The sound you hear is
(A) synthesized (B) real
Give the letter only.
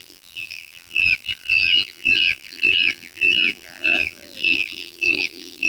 A